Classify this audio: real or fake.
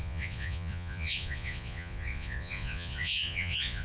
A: fake